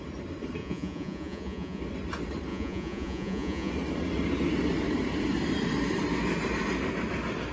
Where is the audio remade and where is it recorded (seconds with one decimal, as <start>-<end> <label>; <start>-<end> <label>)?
0.0-0.6 recorded; 0.6-1.8 remade; 1.8-2.5 recorded; 2.5-3.7 remade; 3.7-7.5 recorded